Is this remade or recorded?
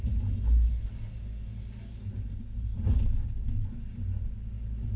recorded